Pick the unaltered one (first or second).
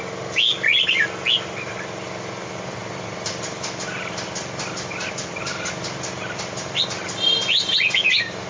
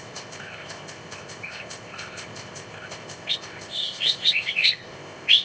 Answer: first